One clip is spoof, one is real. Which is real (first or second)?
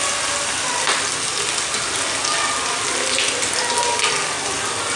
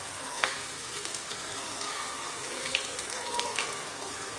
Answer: first